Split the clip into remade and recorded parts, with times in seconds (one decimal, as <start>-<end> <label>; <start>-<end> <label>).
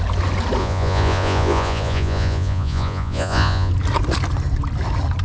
0.0-0.6 recorded; 0.6-3.7 remade; 3.7-5.2 recorded